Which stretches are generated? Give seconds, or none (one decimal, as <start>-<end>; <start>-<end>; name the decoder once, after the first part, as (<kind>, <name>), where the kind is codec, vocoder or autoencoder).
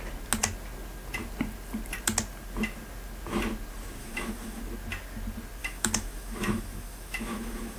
4.0-4.6 (autoencoder, DAC-VAE); 5.6-7.8